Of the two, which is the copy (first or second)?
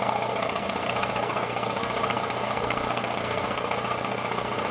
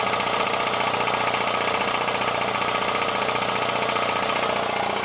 first